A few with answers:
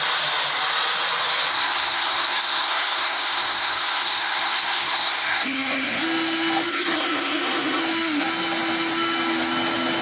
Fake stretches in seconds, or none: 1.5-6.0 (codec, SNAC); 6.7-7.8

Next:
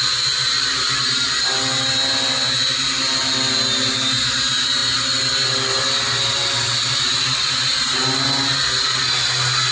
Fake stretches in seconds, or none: none

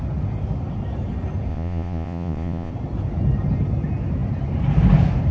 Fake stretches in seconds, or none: 1.5-2.7 (vocoder, Vocos)

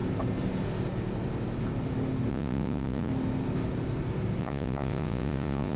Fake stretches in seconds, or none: 2.3-3.1 (vocoder, Vocos); 4.4-5.8

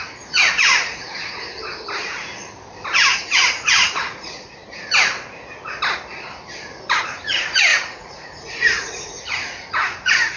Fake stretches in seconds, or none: 0.0-1.5 (vocoder, Vocos); 3.1-4.6; 7.1-10.4